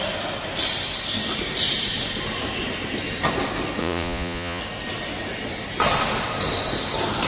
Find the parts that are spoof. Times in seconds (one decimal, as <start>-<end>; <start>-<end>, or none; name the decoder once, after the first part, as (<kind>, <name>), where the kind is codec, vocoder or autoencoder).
3.8-4.6 (vocoder, Vocos)